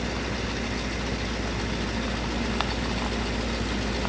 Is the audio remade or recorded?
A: recorded